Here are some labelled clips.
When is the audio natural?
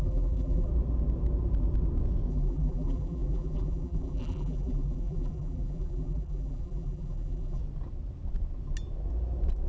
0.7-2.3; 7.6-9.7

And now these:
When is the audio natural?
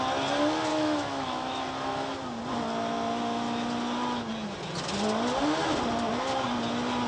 0.0-0.7; 1.6-7.1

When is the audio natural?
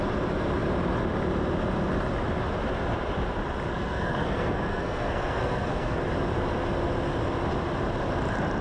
0.0-3.7; 6.0-8.6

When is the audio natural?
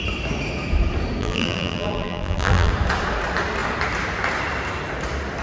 0.0-1.2; 2.7-5.4